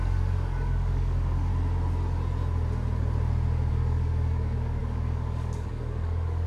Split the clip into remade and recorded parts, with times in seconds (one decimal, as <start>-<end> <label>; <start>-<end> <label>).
0.0-1.5 remade; 1.5-3.7 recorded; 3.7-6.5 remade